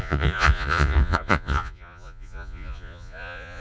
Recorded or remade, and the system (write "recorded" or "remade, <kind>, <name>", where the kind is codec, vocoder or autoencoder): remade, vocoder, Vocos